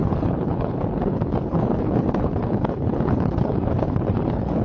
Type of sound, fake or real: fake